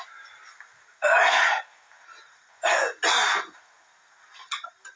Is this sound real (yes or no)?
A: yes